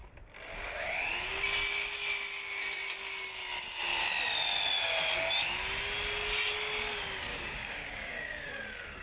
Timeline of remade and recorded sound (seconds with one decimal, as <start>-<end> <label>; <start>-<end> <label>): 0.0-7.3 recorded; 7.3-8.5 remade; 8.5-9.0 recorded